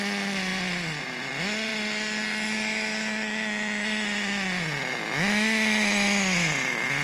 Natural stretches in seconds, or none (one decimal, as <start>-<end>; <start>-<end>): 0.0-7.0